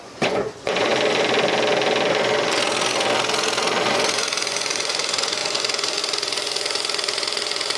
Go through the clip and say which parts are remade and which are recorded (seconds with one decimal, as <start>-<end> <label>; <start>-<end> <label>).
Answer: 0.0-0.9 remade; 0.9-3.9 recorded; 3.9-7.8 remade